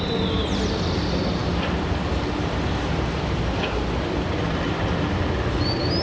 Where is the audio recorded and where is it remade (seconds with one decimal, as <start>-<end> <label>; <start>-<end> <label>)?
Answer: 0.0-6.0 recorded